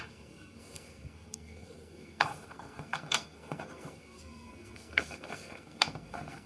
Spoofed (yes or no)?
yes